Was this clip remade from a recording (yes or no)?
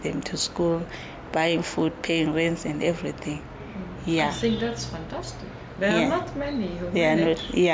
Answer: no